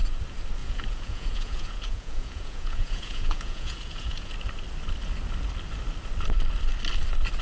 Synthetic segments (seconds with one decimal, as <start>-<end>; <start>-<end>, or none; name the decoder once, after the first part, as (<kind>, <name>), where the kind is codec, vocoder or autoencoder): 0.6-4.3 (vocoder, Vocos)